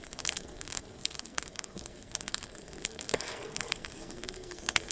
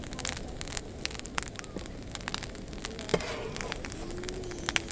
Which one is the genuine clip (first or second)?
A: second